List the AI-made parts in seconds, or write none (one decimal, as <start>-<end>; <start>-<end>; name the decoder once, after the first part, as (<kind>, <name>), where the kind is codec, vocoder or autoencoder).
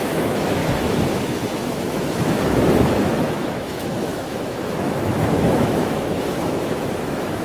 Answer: 0.0-0.6 (autoencoder, DAC-VAE); 1.1-7.4